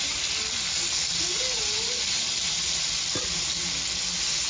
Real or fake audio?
real